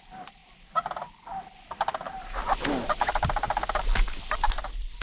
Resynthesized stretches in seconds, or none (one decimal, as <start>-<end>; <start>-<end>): none